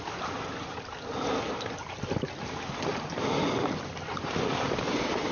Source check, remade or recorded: recorded